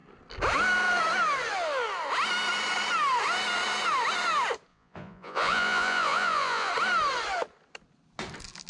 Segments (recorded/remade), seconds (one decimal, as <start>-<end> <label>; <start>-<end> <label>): 0.0-4.7 recorded; 4.7-6.7 remade; 6.7-8.7 recorded